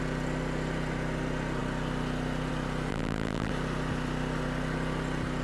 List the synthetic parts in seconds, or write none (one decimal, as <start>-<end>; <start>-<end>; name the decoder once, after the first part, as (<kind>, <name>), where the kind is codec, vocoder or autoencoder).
2.9-3.5 (vocoder, BigVGAN v2)